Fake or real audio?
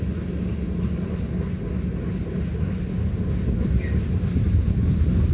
real